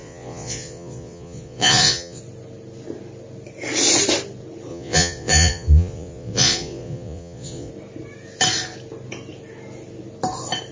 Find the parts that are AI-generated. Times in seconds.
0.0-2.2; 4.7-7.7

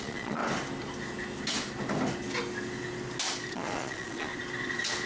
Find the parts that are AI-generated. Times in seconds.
0.0-0.4; 3.5-4.3

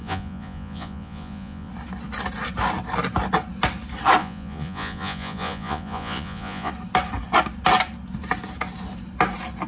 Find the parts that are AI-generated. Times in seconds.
0.0-1.7; 4.2-6.7

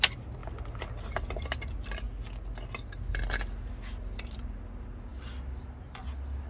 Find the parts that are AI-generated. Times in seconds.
none

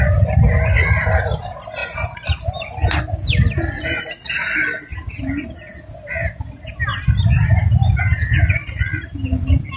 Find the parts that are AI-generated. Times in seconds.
none

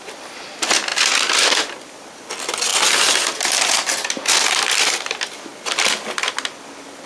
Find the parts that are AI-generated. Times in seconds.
none

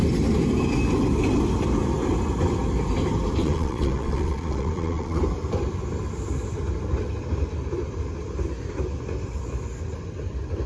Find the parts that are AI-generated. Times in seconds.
3.4-5.2

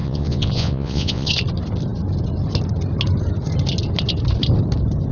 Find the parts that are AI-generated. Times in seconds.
0.0-1.3